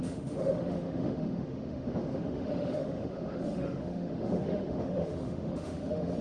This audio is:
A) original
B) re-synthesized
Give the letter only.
B